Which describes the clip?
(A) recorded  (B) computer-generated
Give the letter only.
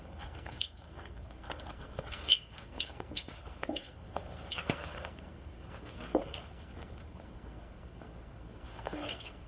B